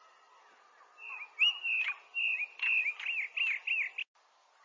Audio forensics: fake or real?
real